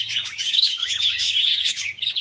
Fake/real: fake